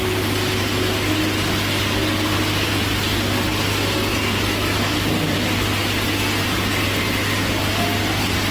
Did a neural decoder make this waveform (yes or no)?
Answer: no